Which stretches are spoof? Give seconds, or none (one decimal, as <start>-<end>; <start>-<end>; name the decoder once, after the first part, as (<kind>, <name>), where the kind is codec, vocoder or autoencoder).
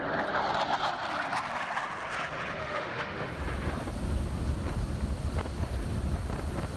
2.6-3.3 (autoencoder, DAC-VAE)